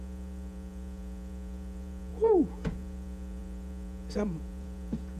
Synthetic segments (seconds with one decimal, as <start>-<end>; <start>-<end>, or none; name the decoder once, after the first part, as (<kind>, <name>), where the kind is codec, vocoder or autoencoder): 0.0-5.2 (vocoder, Vocos)